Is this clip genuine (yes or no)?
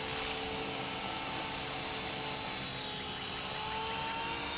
yes